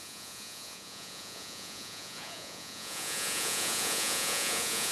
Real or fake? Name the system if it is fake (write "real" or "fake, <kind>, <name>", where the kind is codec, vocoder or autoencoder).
fake, vocoder, Vocos